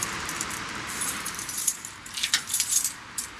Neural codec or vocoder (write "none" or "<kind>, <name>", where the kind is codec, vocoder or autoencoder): vocoder, BigVGAN v2